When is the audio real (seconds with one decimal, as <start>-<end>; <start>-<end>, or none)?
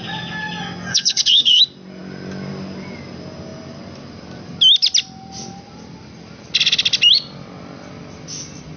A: 0.0-0.9; 1.6-8.8